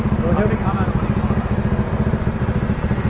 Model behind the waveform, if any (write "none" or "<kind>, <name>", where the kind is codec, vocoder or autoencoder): none